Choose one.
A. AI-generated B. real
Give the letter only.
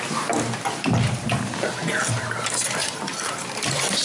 B